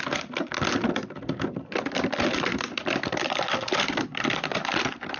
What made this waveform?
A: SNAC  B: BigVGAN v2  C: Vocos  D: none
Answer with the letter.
D